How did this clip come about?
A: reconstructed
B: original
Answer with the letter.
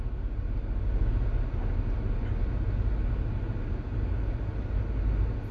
B